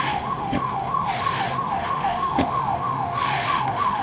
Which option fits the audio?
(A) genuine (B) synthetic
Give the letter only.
B